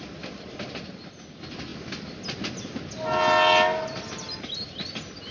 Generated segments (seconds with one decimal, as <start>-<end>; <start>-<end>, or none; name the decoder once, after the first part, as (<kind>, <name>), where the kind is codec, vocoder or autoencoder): none